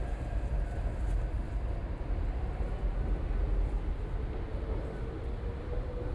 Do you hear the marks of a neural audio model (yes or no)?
no